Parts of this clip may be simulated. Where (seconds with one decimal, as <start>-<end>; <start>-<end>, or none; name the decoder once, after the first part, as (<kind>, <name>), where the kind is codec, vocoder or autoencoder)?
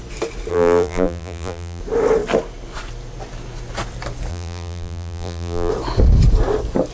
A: 0.5-1.8 (vocoder, BigVGAN v2); 4.3-5.7